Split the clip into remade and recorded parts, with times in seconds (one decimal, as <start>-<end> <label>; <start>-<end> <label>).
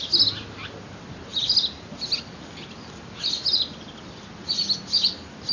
0.0-5.5 recorded